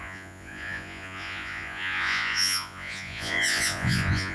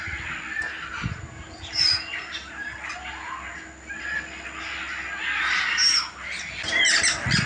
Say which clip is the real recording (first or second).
second